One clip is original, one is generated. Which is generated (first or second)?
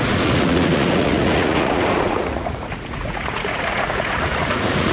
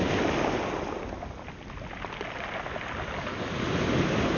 first